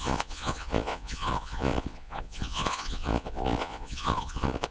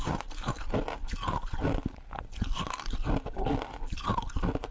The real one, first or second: second